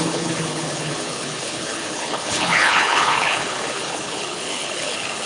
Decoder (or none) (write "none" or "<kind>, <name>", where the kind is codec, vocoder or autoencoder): codec, HILCodec